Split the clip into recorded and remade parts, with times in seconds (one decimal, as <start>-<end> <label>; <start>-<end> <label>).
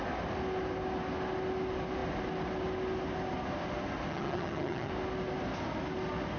0.0-4.1 recorded; 4.1-4.9 remade; 4.9-6.4 recorded